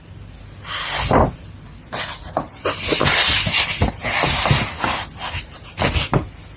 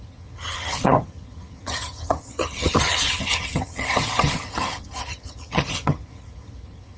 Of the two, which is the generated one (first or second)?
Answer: second